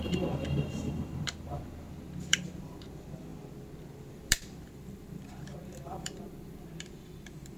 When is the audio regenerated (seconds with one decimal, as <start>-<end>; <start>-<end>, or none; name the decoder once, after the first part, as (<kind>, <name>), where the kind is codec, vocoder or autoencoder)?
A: 0.0-3.3 (vocoder, BigVGAN v2); 4.1-7.6